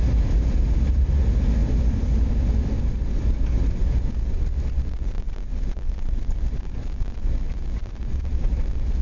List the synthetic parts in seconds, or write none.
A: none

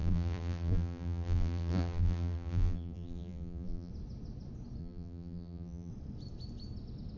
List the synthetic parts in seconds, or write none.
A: 0.0-3.9; 4.8-5.9

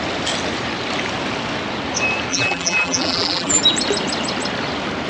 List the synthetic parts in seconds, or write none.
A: 2.3-3.6